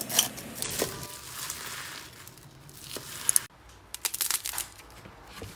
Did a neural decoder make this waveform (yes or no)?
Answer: no